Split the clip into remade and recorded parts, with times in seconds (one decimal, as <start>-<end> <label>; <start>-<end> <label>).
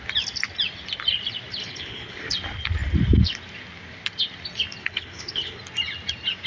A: 0.0-1.6 recorded; 1.6-2.3 remade; 2.3-4.8 recorded; 4.8-5.6 remade; 5.6-6.5 recorded